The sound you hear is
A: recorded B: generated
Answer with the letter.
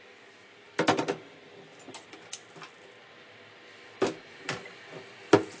A